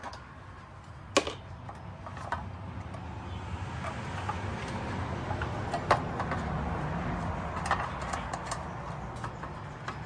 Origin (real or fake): real